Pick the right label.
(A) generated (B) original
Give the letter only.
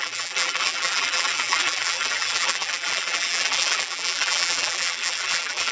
A